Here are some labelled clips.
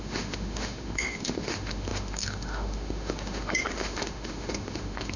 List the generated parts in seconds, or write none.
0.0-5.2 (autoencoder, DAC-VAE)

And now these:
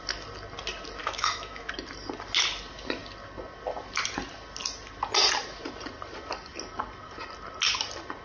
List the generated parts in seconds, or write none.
1.0-1.7 (autoencoder, DAC-VAE)

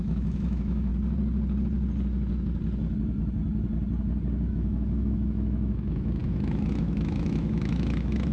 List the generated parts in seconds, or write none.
0.0-0.9 (autoencoder, DAC-VAE); 4.5-8.3

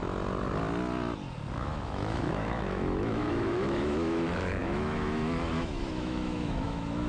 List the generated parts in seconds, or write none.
1.5-7.1 (autoencoder, DAC-VAE)

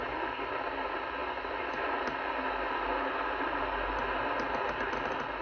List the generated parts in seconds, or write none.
none

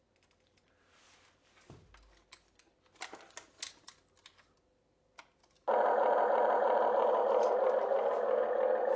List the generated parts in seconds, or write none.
none

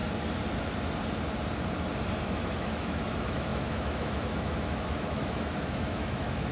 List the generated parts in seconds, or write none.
2.2-6.5 (autoencoder, DAC-VAE)

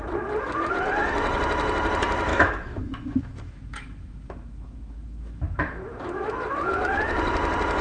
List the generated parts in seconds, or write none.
2.3-7.0 (autoencoder, DAC-VAE)